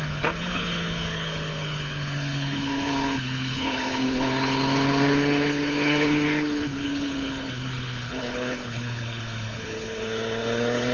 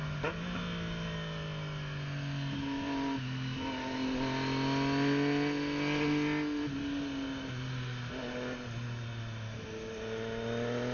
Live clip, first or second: second